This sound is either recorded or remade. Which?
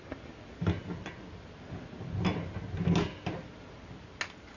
recorded